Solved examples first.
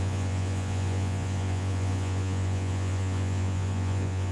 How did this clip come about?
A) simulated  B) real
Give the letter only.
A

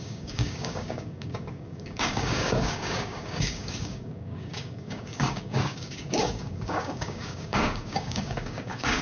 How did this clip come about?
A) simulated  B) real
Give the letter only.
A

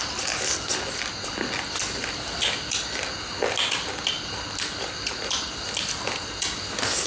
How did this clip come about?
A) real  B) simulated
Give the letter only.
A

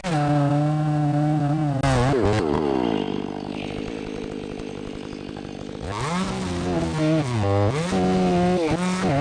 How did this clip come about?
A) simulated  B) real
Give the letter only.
B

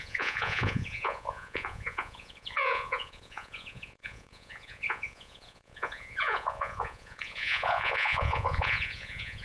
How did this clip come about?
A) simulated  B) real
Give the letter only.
A